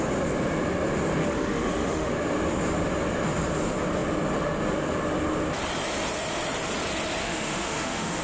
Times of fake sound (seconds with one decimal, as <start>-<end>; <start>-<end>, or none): 1.2-2.1; 7.2-8.2